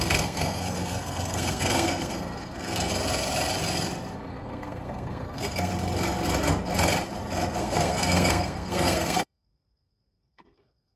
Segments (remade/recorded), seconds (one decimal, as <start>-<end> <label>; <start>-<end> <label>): 0.0-2.9 remade; 2.9-4.3 recorded; 4.3-5.7 remade; 5.7-7.6 recorded; 7.6-11.0 remade